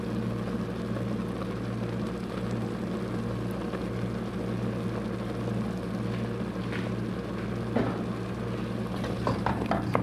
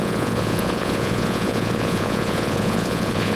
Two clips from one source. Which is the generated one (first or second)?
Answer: second